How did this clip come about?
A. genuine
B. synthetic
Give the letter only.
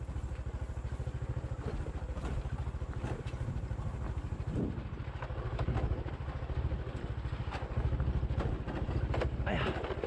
A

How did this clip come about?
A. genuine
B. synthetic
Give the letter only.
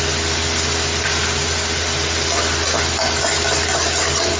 A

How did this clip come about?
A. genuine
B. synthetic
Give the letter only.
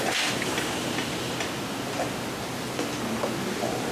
A